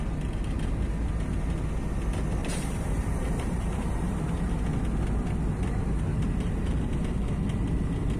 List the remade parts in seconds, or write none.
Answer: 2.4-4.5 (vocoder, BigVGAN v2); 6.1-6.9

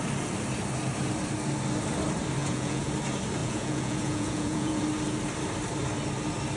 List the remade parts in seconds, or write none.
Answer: 2.4-2.9 (vocoder, Vocos); 3.4-4.8

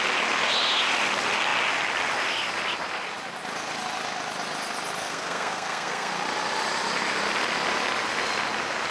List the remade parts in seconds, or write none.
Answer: 5.0-6.1 (codec, SNAC)

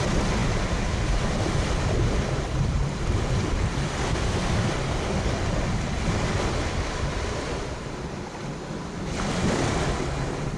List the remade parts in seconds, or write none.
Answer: none

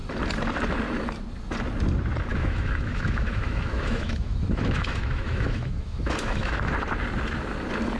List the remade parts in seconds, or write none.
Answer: 2.3-6.7 (autoencoder, DAC-VAE)

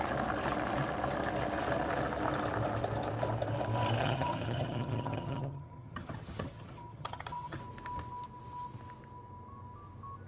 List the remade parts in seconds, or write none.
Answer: 4.0-7.6 (vocoder, HiFi-GAN)